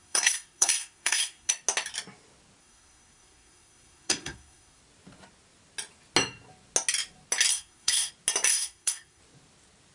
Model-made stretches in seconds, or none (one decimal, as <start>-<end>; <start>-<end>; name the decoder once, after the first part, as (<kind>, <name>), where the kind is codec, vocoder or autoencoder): 0.0-1.5 (codec, SNAC); 2.6-4.8; 7.5-8.1; 8.5-9.2